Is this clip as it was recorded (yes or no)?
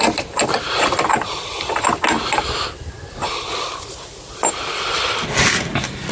yes